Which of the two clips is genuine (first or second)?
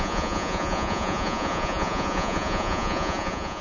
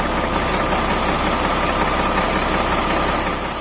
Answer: second